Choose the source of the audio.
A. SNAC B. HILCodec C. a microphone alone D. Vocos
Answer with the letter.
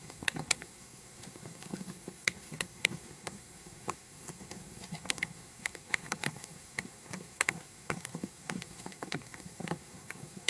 A